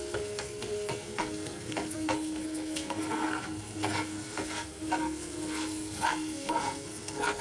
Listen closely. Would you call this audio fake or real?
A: fake